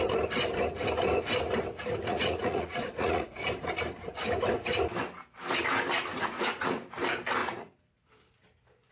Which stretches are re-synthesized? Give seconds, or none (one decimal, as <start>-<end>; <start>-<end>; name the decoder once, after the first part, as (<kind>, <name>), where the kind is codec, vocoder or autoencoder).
2.1-3.5 (vocoder, Vocos); 6.1-6.8; 7.4-8.1